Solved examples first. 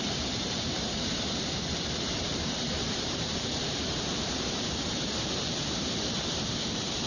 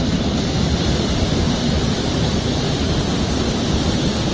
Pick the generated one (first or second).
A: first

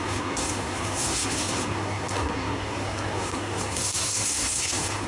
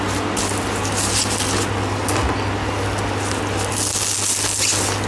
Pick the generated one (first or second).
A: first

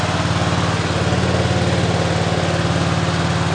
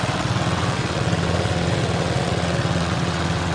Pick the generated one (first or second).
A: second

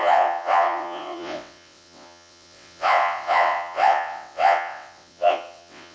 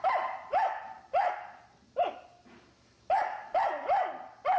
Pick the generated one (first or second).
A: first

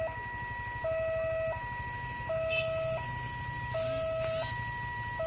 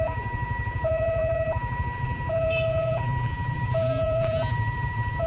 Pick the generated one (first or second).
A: second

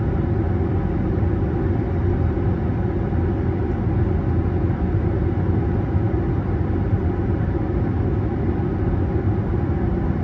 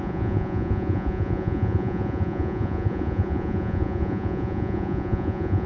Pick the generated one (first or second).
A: second